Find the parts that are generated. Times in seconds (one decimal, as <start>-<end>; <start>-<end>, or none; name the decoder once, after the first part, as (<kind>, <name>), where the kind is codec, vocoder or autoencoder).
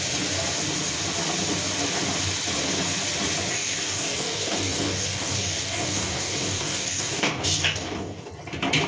3.5-8.3 (codec, DAC)